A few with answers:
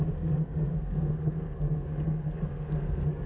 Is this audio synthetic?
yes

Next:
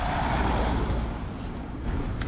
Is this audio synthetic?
no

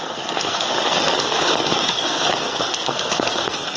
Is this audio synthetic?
yes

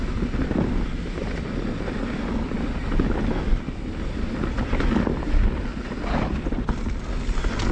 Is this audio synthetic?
no